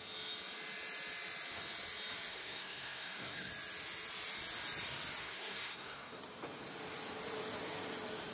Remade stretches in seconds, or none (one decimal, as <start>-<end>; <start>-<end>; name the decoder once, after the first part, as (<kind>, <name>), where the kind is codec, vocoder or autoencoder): 2.3-3.5 (codec, SNAC); 5.2-6.2